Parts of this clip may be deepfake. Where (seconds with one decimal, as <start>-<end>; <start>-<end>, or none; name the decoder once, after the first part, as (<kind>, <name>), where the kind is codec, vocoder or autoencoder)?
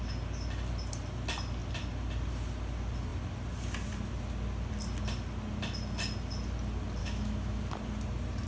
7.0-7.6 (autoencoder, DAC-VAE)